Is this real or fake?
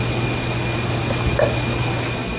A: real